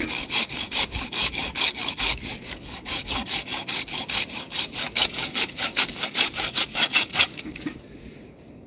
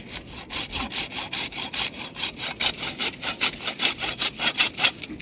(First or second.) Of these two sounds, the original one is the second